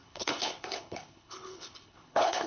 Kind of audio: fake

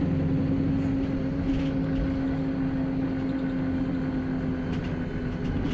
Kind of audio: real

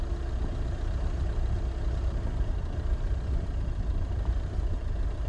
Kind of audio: real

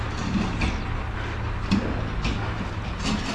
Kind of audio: real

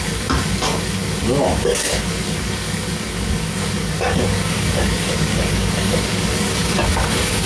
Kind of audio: fake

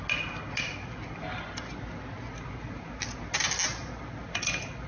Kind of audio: real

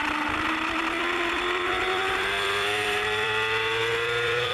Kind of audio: fake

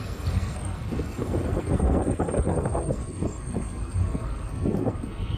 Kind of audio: fake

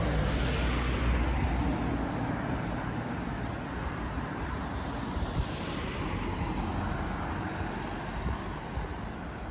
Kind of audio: real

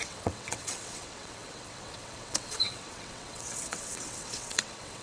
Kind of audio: fake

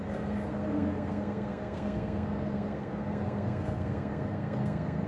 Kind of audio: fake